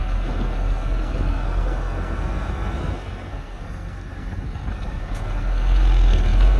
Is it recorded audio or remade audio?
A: remade